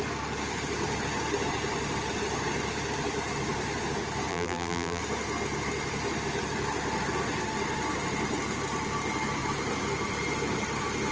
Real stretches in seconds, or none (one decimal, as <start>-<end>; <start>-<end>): 0.0-4.3; 5.0-11.1

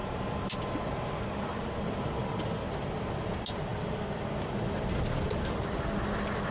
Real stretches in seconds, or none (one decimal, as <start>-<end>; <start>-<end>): 3.1-6.5

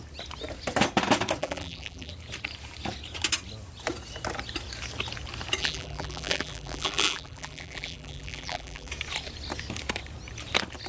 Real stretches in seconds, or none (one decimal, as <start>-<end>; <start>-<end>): 0.0-1.4; 2.1-5.6; 8.9-10.9